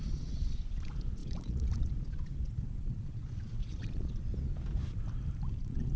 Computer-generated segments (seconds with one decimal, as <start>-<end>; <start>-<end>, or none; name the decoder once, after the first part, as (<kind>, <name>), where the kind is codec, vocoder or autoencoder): 0.0-4.3 (vocoder, Vocos); 5.6-6.0